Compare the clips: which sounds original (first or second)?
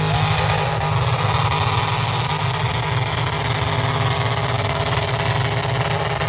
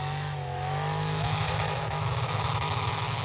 first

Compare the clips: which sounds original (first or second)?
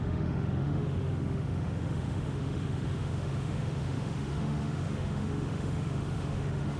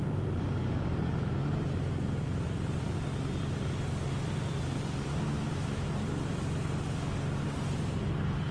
second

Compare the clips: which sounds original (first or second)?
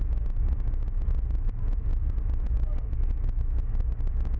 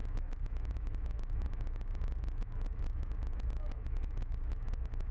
first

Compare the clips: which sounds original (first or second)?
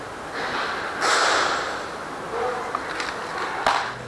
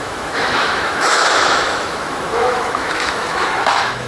first